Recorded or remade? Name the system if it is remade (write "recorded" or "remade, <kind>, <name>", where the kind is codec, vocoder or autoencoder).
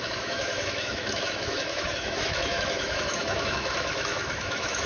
remade, autoencoder, DAC-VAE